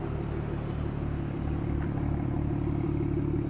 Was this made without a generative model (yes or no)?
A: no